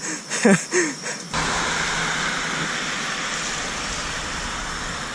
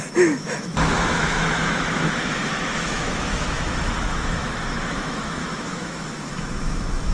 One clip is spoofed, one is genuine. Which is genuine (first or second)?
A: first